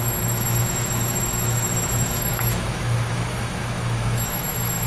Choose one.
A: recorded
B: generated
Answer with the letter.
B